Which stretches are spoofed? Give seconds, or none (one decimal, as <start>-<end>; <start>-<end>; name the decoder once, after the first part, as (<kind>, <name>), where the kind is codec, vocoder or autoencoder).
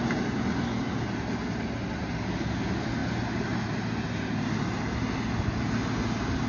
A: none